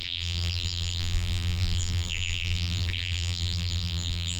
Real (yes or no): no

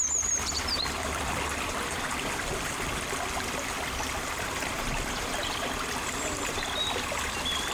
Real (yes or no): no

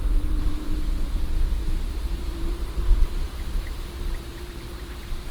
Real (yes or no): no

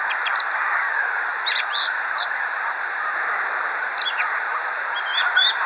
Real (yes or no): no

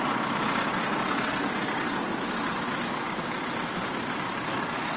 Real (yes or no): yes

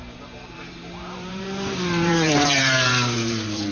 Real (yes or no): no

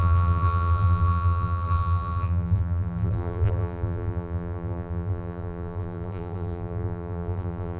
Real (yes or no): no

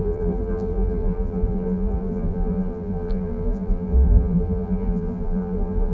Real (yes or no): no